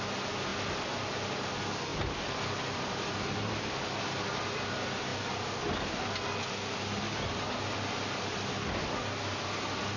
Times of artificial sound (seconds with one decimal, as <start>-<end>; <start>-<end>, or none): none